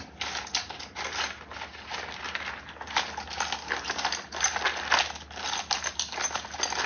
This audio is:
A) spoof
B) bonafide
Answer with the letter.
B